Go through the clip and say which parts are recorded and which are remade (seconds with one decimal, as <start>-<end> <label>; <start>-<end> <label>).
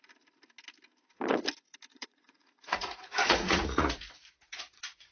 0.0-1.9 recorded; 1.9-5.1 remade